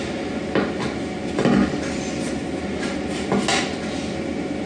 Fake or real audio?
real